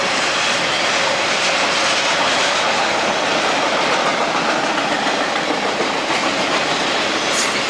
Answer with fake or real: real